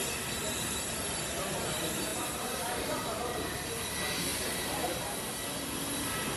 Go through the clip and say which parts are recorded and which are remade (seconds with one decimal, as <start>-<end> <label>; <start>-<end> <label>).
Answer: 0.0-2.1 recorded; 2.1-3.7 remade; 3.7-4.3 recorded; 4.3-5.0 remade; 5.0-6.4 recorded